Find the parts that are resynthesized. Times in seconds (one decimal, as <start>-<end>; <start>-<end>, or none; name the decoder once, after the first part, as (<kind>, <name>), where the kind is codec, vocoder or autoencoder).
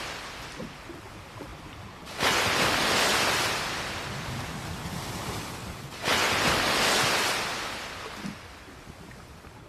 0.0-0.6 (vocoder, BigVGAN v2); 1.1-6.1; 8.8-9.7